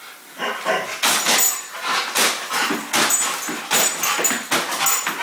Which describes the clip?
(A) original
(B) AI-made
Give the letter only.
A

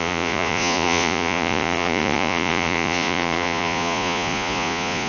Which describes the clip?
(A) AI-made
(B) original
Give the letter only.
A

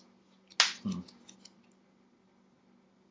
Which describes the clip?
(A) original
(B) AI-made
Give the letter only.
A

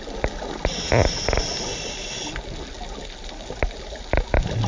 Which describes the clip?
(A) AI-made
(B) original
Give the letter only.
B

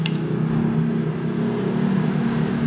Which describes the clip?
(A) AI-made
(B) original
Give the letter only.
B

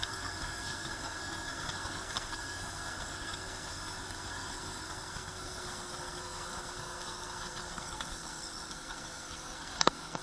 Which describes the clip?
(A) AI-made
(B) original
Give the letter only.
A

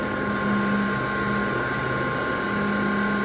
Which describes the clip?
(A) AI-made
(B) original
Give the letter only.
B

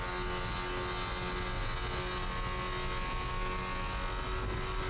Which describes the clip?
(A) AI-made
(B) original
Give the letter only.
B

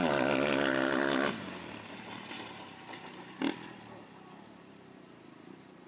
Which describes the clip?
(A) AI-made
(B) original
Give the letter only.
B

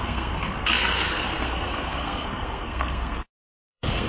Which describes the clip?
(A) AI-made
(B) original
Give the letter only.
A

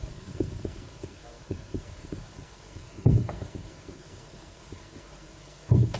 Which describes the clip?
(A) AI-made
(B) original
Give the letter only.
A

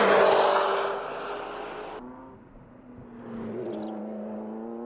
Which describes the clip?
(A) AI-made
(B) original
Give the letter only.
B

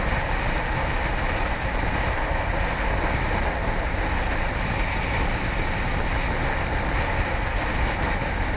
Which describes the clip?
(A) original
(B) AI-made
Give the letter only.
A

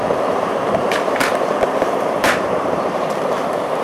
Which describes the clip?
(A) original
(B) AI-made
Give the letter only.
B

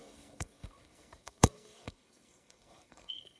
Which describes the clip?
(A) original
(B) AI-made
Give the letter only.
B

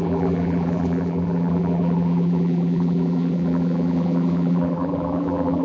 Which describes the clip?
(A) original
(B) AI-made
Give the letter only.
B